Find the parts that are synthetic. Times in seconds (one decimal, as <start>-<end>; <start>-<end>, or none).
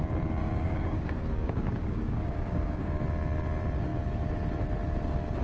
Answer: 0.4-3.0